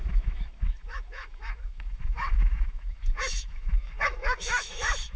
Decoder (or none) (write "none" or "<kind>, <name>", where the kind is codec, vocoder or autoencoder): autoencoder, DAC-VAE